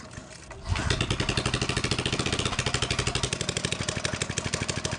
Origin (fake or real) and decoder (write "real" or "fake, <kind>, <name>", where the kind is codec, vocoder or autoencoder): real